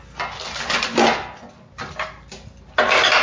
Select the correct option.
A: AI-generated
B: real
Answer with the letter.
B